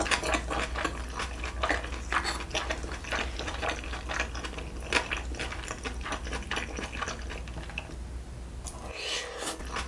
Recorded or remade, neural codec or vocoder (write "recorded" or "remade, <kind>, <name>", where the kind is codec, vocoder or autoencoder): recorded